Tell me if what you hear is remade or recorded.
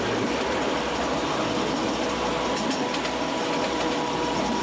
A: recorded